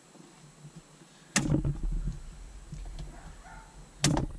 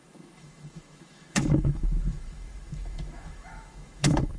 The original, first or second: first